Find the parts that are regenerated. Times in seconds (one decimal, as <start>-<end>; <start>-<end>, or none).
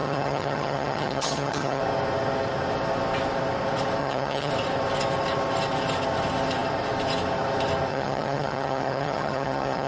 0.0-1.8; 4.0-4.5; 7.9-9.9